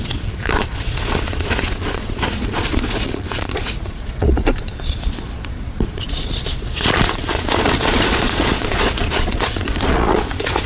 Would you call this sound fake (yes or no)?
yes